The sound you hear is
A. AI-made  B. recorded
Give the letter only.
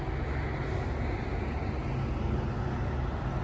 B